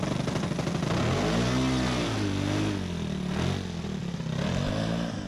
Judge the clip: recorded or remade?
recorded